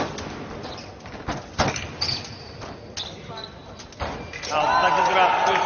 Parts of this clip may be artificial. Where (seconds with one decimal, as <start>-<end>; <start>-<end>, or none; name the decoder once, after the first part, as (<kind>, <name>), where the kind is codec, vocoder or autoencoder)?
none